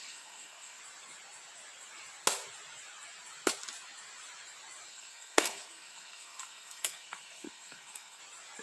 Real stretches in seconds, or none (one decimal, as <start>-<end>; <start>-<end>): 0.8-4.9; 8.2-8.6